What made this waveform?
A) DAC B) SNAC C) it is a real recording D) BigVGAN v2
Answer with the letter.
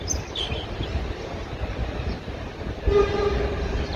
C